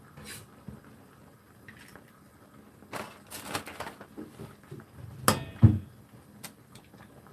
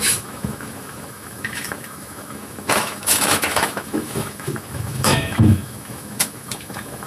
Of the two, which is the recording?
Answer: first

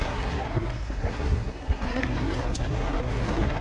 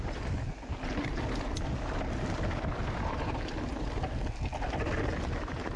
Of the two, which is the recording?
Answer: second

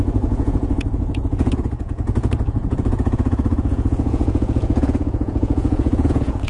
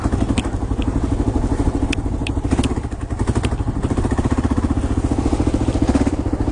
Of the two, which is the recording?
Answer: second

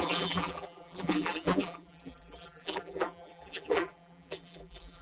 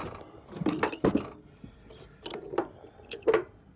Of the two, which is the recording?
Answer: second